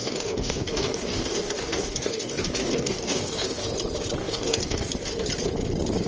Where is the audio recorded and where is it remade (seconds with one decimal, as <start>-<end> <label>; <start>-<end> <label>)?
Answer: 0.0-3.7 remade; 3.7-4.2 recorded; 4.2-4.9 remade; 4.9-6.1 recorded